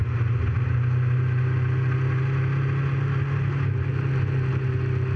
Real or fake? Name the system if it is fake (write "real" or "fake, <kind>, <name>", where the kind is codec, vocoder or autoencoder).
real